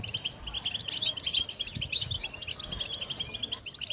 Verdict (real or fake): real